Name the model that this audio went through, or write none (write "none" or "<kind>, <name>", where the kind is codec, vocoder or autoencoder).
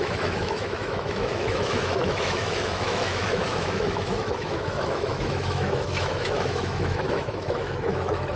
autoencoder, DAC-VAE